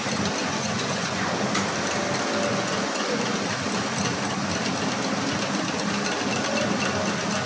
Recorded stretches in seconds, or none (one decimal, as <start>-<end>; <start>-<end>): 0.0-0.4; 1.3-2.5; 3.2-7.5